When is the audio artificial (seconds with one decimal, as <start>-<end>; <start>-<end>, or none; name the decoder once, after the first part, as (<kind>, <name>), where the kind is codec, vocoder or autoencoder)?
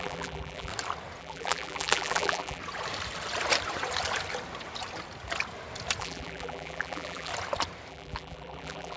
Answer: 0.0-0.7 (vocoder, BigVGAN v2); 1.2-2.6; 6.0-7.3; 7.9-9.0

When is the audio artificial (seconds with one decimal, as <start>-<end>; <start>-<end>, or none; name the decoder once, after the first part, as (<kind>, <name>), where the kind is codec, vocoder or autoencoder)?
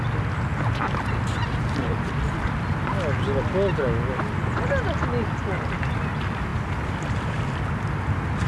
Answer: none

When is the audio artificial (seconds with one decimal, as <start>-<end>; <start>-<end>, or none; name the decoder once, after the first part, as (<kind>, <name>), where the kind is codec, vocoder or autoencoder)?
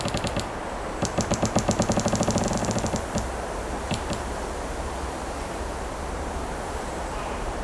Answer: 2.6-7.6 (vocoder, BigVGAN v2)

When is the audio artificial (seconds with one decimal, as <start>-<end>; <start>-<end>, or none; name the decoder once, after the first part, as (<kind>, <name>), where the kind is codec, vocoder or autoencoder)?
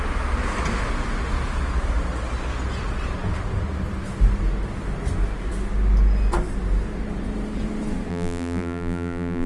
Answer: 8.1-9.5 (vocoder, BigVGAN v2)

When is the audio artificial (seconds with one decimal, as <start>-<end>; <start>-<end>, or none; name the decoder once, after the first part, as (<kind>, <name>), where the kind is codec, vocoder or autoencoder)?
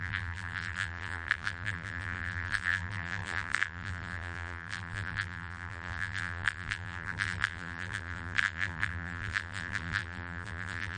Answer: 0.0-11.0 (vocoder, BigVGAN v2)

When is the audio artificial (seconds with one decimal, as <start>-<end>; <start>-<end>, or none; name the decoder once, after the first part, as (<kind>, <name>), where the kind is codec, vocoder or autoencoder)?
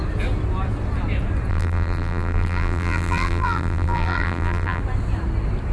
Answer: 1.5-4.8 (vocoder, BigVGAN v2)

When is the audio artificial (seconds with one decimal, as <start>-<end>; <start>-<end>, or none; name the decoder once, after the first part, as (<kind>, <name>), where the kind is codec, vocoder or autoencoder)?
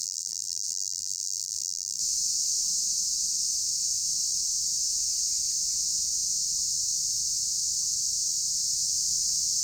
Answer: 0.0-2.0 (vocoder, BigVGAN v2)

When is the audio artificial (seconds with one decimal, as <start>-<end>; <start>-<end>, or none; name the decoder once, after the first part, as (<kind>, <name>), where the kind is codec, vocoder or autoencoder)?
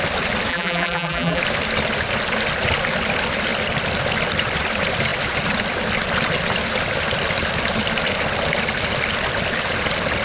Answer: 0.5-1.4 (vocoder, BigVGAN v2)